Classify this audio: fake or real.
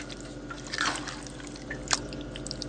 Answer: real